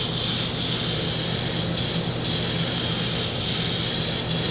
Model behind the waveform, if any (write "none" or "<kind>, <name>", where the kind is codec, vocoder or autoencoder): none